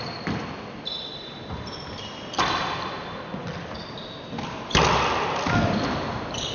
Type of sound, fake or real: real